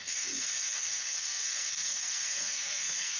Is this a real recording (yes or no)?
no